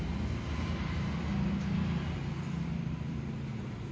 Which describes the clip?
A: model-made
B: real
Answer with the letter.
B